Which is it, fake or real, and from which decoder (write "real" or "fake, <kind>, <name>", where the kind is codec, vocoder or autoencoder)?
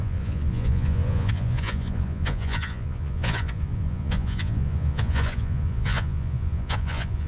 fake, vocoder, Vocos